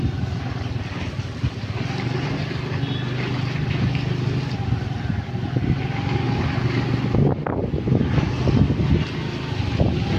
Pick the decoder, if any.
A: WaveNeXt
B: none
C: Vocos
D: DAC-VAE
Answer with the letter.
B